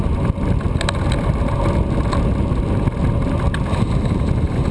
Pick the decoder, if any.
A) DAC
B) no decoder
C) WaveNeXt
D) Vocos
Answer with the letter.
B